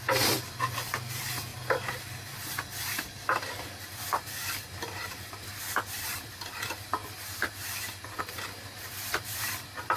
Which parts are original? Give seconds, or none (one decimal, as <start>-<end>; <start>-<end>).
7.0-8.2